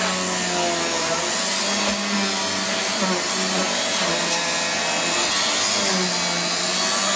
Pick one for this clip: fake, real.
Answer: real